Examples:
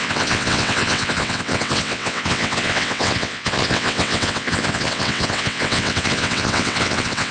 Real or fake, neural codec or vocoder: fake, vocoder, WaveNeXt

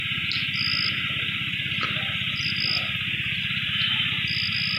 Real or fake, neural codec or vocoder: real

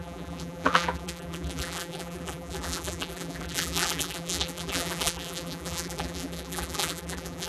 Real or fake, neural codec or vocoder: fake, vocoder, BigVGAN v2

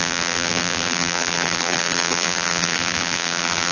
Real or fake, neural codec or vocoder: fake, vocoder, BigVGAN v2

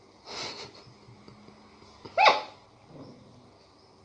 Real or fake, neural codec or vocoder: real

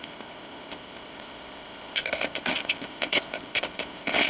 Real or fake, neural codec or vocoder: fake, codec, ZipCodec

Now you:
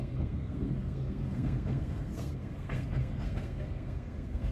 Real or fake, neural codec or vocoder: fake, codec, SNAC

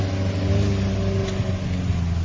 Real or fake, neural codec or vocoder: real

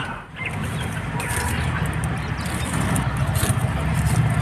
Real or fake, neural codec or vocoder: real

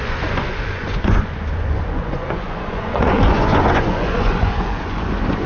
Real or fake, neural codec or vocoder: fake, vocoder, Vocos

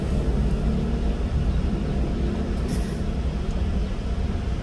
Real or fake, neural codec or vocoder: real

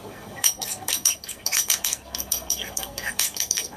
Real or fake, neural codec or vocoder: fake, codec, SNAC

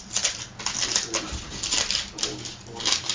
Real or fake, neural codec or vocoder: real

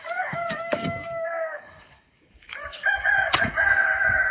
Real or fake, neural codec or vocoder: fake, codec, DAC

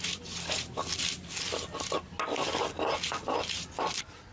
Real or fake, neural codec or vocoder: real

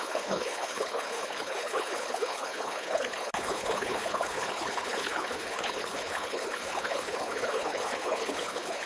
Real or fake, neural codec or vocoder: fake, codec, HILCodec